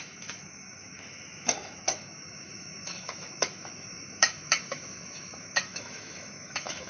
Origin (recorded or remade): remade